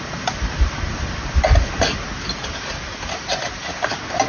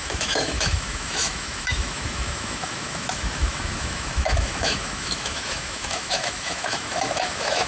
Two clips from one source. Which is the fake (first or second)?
second